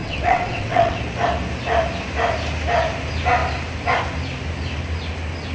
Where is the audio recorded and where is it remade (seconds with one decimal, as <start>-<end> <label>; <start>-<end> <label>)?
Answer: 0.0-1.0 remade; 1.0-5.5 recorded